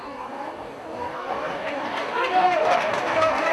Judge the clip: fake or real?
fake